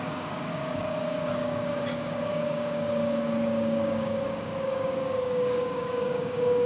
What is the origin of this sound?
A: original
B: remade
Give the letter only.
B